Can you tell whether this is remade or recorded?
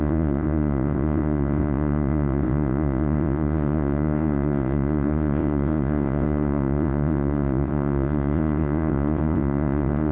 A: remade